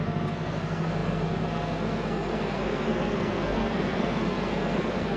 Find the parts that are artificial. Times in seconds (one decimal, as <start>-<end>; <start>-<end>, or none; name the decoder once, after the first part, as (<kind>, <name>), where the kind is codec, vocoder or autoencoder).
0.0-5.2 (codec, SNAC)

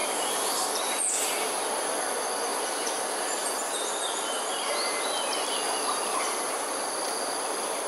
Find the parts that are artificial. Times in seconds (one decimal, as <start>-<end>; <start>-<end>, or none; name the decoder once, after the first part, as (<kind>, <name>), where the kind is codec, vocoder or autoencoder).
0.0-1.1 (vocoder, BigVGAN v2); 2.5-5.5